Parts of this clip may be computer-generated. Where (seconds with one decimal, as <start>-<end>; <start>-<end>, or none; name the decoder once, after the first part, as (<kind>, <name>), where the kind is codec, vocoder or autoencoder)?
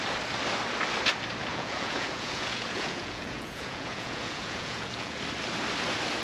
1.5-5.2 (vocoder, Vocos)